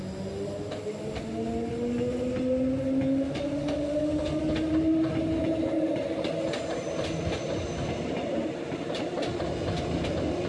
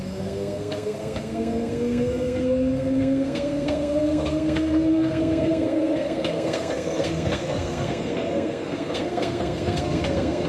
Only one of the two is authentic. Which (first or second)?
first